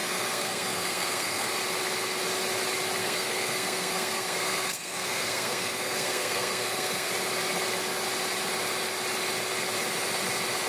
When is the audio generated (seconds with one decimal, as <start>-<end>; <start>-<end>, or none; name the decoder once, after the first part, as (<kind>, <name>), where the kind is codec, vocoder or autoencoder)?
0.0-1.5 (codec, SNAC); 3.0-7.1